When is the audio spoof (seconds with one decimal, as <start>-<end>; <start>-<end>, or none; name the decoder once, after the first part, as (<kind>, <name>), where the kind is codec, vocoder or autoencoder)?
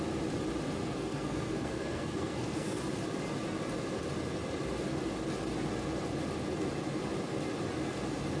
0.8-2.8 (codec, SNAC)